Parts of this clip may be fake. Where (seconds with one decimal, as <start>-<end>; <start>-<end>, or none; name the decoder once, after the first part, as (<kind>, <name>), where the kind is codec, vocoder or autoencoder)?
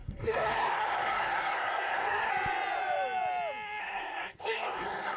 0.0-2.3 (codec, SNAC); 3.8-5.2